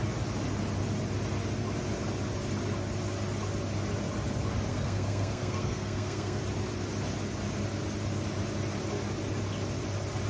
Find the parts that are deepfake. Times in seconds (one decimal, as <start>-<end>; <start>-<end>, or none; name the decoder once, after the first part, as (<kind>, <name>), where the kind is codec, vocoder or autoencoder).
4.7-6.4 (codec, SNAC)